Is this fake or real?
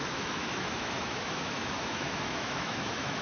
fake